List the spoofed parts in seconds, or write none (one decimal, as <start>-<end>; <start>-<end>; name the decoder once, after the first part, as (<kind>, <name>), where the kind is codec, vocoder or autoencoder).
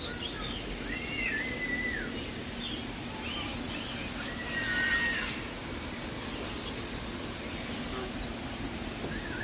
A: none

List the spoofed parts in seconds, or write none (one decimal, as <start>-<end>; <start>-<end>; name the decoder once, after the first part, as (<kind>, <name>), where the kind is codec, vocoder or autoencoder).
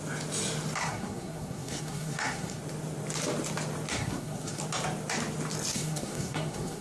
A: 0.8-2.6 (codec, SNAC); 3.9-4.6; 5.7-6.8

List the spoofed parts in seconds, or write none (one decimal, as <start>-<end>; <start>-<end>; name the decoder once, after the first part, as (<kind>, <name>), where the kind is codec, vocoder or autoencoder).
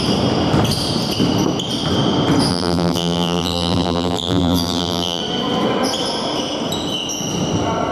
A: 2.5-5.2 (vocoder, BigVGAN v2)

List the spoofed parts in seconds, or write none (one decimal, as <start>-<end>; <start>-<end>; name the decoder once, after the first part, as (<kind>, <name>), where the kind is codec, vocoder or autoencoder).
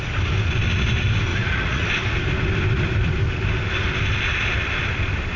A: 1.3-1.9 (vocoder, Vocos)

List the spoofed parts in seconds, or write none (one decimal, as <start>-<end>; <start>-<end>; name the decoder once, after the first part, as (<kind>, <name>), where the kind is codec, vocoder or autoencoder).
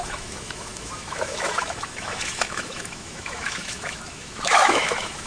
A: 0.0-5.3 (autoencoder, DAC-VAE)